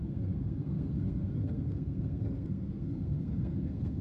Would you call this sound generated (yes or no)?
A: yes